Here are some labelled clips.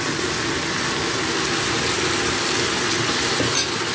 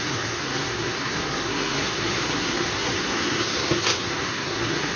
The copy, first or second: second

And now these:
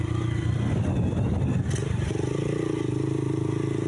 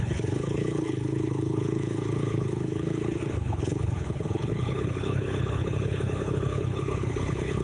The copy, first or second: second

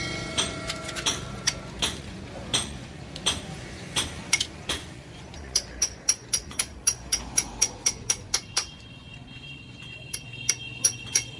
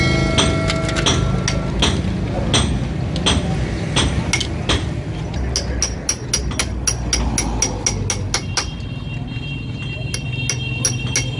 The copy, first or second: first